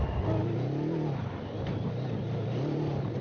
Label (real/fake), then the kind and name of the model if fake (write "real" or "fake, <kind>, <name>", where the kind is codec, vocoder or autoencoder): real